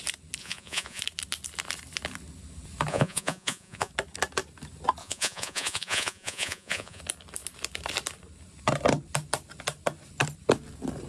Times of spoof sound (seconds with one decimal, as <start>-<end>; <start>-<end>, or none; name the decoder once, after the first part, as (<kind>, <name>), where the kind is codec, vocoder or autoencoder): 0.4-1.0 (vocoder, Vocos); 2.9-3.9; 5.0-7.0